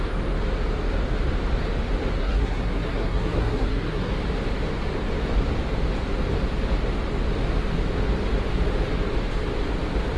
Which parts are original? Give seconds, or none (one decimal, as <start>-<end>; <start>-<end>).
0.0-2.2; 4.1-10.2